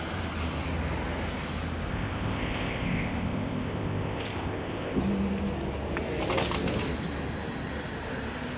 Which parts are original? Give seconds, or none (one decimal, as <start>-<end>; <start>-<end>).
0.0-1.9; 5.0-8.6